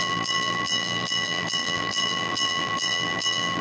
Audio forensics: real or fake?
fake